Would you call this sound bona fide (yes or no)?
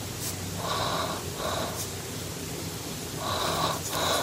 yes